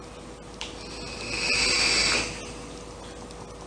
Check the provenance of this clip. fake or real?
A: real